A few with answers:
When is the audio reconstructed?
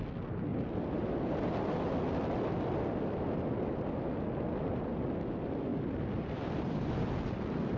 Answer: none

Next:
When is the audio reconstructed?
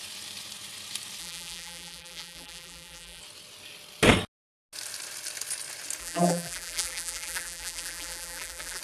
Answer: 1.2-3.2 (vocoder, BigVGAN v2); 6.0-8.8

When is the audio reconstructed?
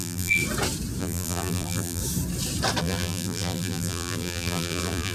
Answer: 0.0-0.4 (vocoder, BigVGAN v2); 1.0-2.0; 2.8-5.1